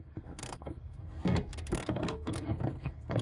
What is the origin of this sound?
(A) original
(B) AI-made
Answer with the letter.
B